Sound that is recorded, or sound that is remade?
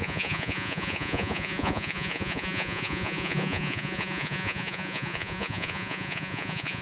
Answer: remade